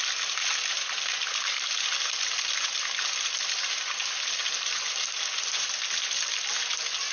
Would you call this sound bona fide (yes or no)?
yes